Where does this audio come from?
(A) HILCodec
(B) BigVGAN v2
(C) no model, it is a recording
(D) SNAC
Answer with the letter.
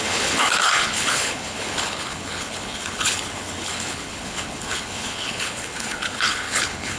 A